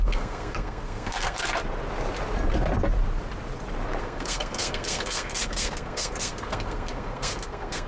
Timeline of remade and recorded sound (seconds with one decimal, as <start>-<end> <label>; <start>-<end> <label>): 0.0-1.4 remade; 1.4-4.0 recorded; 4.0-7.9 remade